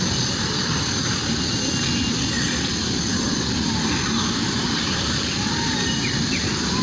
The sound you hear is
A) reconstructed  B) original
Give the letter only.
B